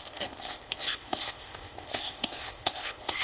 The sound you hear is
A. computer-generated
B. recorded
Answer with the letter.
A